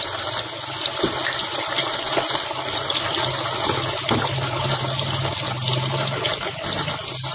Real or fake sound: real